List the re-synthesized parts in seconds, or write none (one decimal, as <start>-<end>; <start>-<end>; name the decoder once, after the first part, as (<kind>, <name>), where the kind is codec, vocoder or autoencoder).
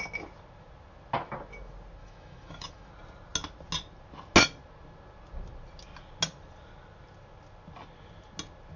2.0-2.9 (autoencoder, DAC-VAE)